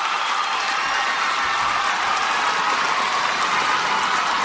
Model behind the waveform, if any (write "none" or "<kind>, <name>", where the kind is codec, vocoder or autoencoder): none